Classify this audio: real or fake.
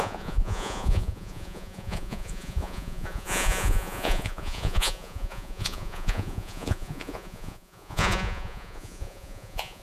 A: fake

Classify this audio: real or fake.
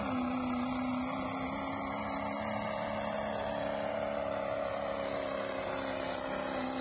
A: real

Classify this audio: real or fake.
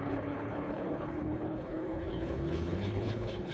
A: fake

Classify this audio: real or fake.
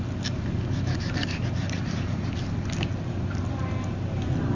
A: real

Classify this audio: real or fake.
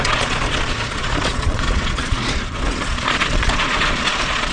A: fake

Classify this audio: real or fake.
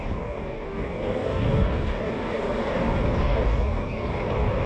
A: fake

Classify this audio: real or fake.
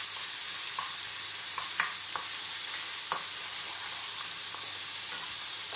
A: real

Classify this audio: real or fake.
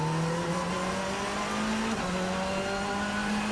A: real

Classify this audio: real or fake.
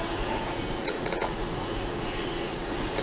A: fake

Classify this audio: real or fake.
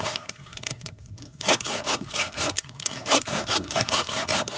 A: fake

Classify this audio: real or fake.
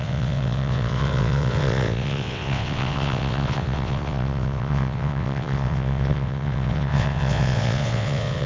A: fake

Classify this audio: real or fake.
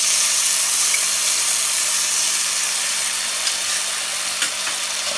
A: real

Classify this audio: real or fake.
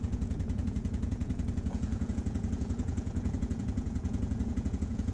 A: fake